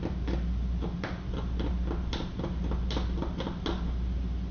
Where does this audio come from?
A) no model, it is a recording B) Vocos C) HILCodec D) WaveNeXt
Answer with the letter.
A